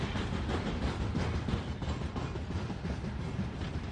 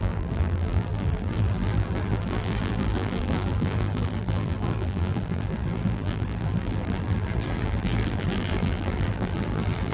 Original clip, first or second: first